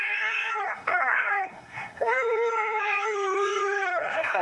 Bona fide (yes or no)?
no